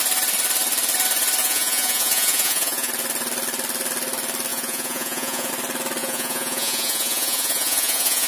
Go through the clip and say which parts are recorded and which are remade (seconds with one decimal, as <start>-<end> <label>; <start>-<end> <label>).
0.0-1.4 recorded; 1.4-2.9 remade; 2.9-4.5 recorded; 4.5-5.5 remade; 5.5-6.0 recorded; 6.0-8.3 remade